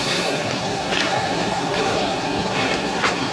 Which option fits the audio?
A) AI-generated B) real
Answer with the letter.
A